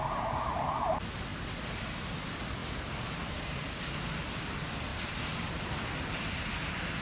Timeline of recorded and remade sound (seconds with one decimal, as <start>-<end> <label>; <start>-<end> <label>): 0.0-7.0 recorded